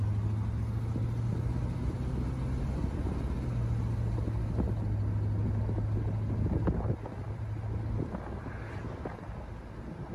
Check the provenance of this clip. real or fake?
real